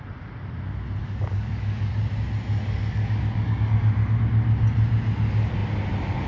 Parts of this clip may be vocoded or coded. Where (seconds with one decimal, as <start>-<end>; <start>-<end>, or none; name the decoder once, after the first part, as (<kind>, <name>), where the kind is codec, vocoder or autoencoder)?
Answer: 1.0-1.9 (codec, DAC); 2.6-3.7